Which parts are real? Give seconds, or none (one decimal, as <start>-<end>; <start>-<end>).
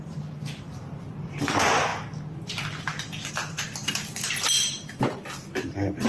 1.9-3.3